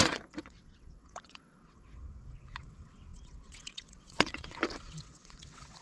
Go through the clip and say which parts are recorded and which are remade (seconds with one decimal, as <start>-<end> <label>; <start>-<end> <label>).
0.0-5.8 remade